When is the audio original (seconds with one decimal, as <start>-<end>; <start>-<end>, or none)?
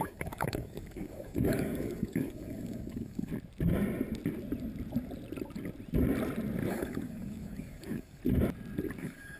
3.3-6.7; 8.2-9.0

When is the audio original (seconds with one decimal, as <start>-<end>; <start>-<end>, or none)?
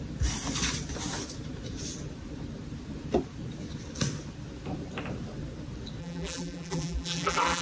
0.0-6.0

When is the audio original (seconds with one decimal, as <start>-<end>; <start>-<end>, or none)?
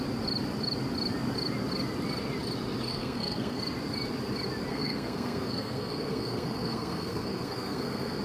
0.0-2.9; 3.6-4.7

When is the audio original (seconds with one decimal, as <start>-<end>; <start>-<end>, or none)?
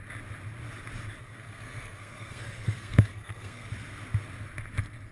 0.0-1.2; 3.7-5.1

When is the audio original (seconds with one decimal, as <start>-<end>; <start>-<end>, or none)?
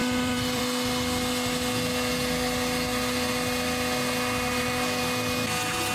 0.6-5.9